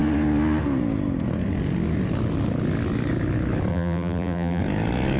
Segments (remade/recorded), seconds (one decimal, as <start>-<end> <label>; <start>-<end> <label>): 0.0-3.7 recorded; 3.7-4.6 remade; 4.6-5.2 recorded